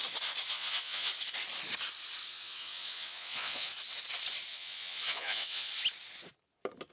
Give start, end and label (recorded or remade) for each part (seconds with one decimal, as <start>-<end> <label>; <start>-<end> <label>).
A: 0.0-0.5 recorded; 0.5-1.1 remade; 1.1-2.3 recorded; 2.3-3.7 remade; 3.7-4.5 recorded; 4.5-5.7 remade; 5.7-6.9 recorded